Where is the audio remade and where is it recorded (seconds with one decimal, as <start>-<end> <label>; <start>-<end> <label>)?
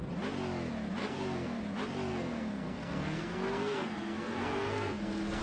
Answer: 0.0-1.0 recorded; 1.0-1.6 remade; 1.6-2.1 recorded; 2.1-5.4 remade